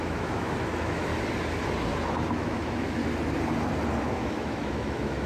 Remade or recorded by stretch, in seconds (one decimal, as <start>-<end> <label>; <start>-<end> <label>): 0.0-1.1 remade; 1.1-2.3 recorded; 2.3-3.0 remade; 3.0-4.0 recorded; 4.0-5.3 remade